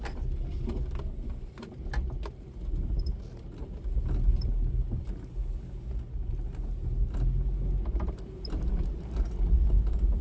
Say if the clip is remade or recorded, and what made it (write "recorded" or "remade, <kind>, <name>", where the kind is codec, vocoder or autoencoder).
recorded